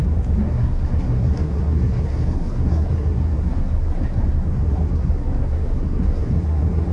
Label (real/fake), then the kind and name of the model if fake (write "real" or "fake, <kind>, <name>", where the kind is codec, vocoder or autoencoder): fake, codec, SNAC